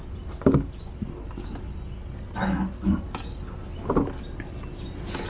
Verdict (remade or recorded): recorded